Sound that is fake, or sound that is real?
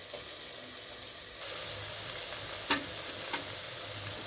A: real